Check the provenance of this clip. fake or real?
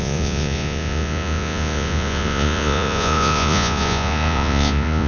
fake